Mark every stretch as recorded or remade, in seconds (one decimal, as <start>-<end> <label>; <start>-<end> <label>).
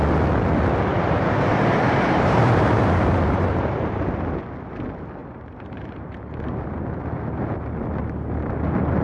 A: 0.0-0.9 recorded; 0.9-4.0 remade; 4.0-5.2 recorded; 5.2-6.5 remade; 6.5-9.0 recorded